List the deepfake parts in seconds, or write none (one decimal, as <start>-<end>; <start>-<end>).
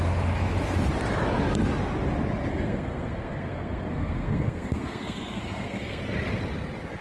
2.5-6.0